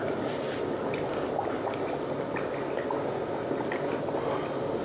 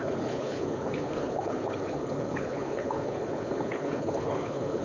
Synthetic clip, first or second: second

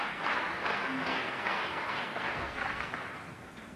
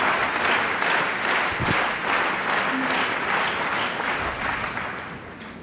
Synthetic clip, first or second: first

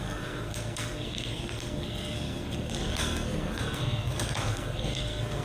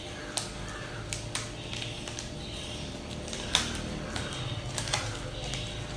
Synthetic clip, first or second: first